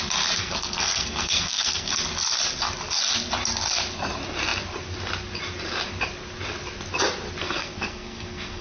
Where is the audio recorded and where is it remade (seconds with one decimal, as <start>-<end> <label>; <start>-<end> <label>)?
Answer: 0.0-0.4 recorded; 0.4-2.0 remade; 2.0-7.4 recorded; 7.4-8.6 remade